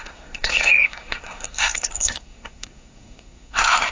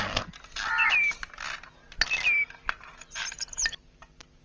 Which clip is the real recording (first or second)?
second